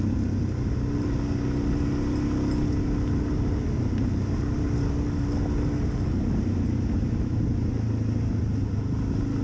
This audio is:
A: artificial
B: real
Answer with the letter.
B